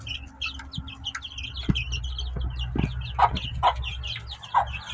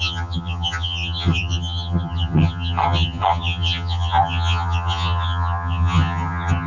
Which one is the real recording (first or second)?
first